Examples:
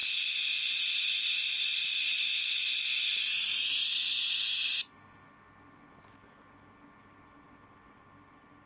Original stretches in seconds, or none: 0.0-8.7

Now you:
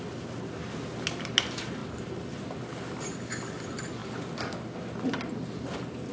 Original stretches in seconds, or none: 0.0-1.8; 2.5-6.1